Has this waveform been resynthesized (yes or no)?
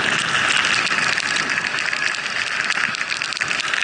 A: no